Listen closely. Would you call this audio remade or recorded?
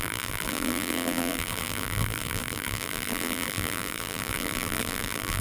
remade